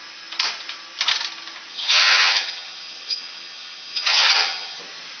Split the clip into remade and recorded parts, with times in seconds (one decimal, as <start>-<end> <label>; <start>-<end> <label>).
0.0-1.7 recorded; 1.7-4.8 remade; 4.8-5.2 recorded